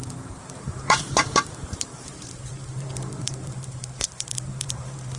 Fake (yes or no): yes